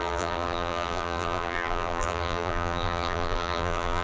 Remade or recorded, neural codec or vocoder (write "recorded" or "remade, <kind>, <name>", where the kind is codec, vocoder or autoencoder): remade, vocoder, BigVGAN v2